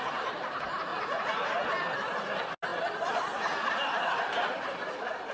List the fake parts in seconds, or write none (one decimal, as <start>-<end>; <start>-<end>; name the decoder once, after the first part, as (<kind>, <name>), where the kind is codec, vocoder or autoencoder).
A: 0.9-1.5 (vocoder, Vocos)